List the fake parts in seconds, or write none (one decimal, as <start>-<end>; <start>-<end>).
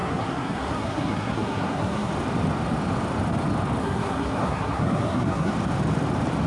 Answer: 0.0-2.1; 3.8-5.5